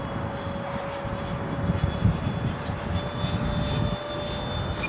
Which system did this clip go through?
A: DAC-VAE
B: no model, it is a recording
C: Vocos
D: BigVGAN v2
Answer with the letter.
B